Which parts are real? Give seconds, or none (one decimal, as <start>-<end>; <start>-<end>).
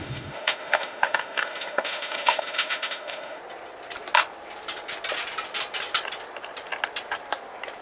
3.4-7.8